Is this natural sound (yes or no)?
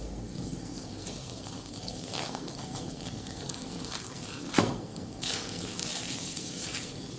no